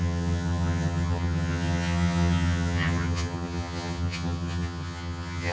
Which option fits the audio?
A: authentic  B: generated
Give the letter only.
B